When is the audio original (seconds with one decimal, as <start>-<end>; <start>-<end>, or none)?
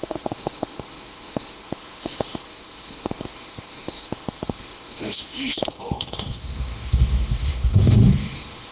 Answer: none